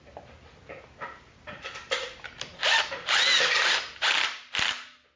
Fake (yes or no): no